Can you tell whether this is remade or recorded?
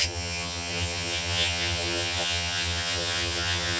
remade